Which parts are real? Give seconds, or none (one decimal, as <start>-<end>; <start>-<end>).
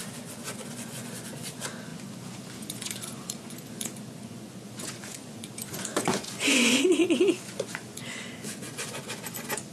none